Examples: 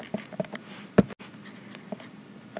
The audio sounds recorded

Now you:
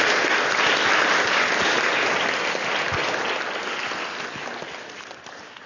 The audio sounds recorded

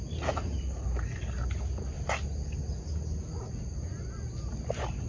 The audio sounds recorded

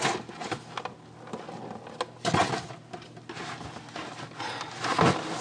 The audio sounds recorded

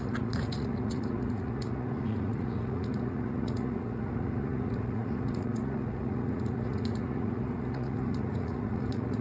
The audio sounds remade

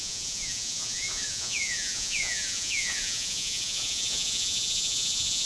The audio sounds remade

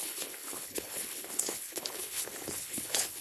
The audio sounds remade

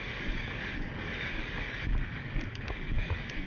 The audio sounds remade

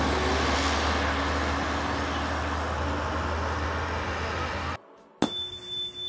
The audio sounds recorded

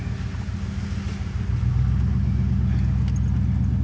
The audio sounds recorded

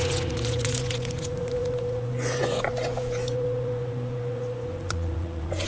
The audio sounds remade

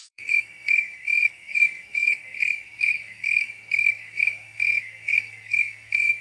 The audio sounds remade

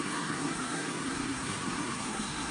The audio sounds remade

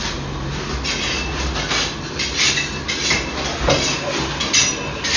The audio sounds recorded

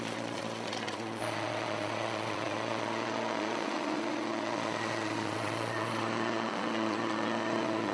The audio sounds remade